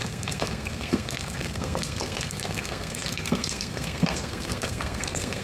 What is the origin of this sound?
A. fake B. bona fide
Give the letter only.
A